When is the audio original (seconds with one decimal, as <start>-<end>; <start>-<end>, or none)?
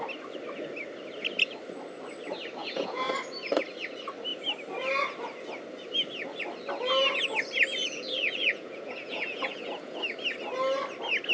0.0-2.6; 3.1-7.7; 10.0-11.3